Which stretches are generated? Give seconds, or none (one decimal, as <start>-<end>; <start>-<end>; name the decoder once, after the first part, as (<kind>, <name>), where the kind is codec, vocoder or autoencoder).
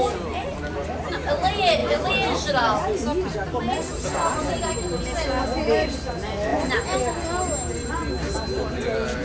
none